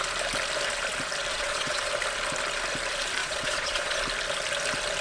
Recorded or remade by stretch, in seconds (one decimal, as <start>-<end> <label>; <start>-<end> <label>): 0.0-1.3 recorded; 1.3-1.9 remade; 1.9-3.2 recorded; 3.2-4.0 remade; 4.0-5.0 recorded